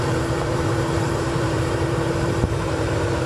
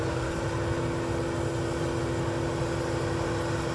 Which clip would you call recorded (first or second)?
second